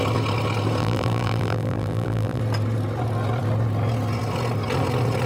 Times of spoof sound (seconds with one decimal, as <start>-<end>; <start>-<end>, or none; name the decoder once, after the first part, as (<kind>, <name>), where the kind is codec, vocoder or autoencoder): 0.8-2.4 (vocoder, BigVGAN v2)